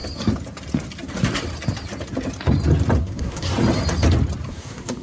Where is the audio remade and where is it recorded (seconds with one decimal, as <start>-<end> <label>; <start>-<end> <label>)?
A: 0.0-3.0 recorded; 3.0-3.5 remade; 3.5-4.5 recorded; 4.5-5.0 remade